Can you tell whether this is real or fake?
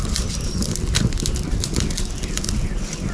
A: real